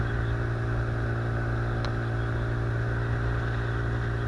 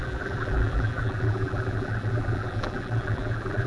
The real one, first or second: first